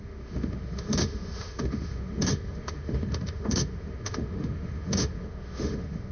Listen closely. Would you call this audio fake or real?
fake